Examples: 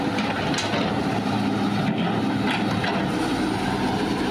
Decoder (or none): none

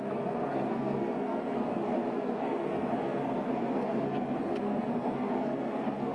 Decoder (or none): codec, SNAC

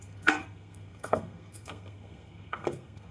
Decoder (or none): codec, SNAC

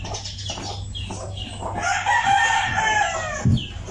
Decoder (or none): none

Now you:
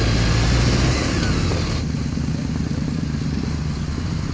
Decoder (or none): none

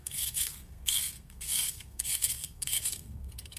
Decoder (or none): codec, SNAC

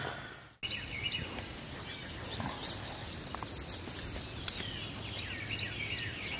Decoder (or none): none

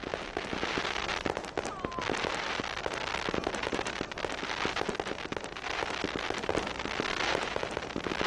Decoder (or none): none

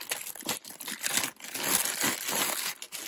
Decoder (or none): none